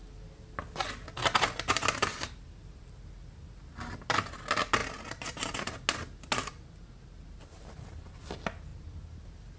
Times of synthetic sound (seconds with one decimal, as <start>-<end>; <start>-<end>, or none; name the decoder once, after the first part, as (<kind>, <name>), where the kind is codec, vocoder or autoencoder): none